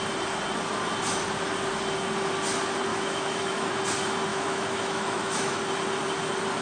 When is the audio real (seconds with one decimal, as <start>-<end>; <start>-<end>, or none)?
0.0-2.9; 3.7-4.3; 5.6-6.6